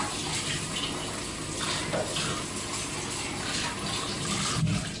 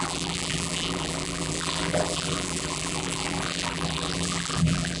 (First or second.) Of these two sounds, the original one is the first